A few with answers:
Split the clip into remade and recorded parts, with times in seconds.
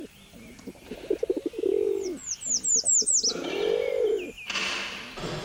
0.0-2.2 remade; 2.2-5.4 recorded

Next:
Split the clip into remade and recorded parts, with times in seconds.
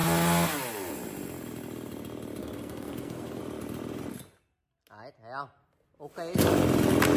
0.0-2.4 recorded; 2.4-3.4 remade; 3.4-7.2 recorded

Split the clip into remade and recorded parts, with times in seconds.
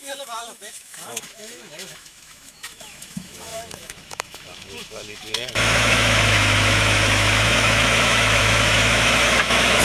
0.0-9.8 remade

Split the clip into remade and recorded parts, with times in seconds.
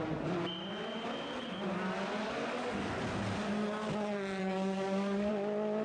0.0-2.2 recorded; 2.2-3.0 remade; 3.0-4.4 recorded; 4.4-5.3 remade; 5.3-5.8 recorded